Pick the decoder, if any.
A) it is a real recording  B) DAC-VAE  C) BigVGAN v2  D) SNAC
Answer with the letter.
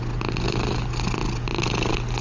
A